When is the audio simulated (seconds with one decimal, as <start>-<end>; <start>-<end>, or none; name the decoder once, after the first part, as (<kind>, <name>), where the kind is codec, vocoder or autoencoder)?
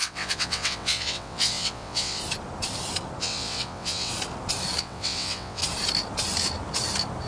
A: 0.0-2.2 (vocoder, WaveNeXt); 3.2-4.1; 4.8-5.6